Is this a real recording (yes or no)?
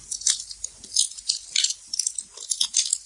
yes